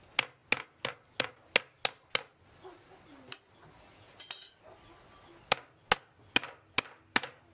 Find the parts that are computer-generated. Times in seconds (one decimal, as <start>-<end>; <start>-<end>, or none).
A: none